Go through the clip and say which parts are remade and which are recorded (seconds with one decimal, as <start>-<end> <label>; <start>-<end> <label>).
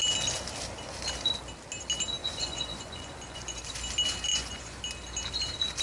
0.0-2.2 recorded; 2.2-3.6 remade; 3.6-4.3 recorded; 4.3-4.8 remade; 4.8-5.8 recorded